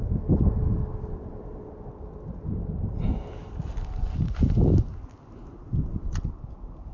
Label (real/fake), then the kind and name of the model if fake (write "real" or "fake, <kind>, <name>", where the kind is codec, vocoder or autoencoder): real